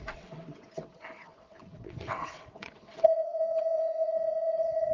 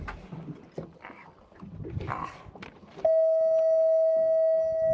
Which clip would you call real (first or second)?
second